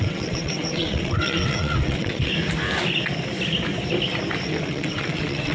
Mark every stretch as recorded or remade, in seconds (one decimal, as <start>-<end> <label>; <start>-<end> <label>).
0.0-2.3 remade; 2.3-4.5 recorded; 4.5-5.5 remade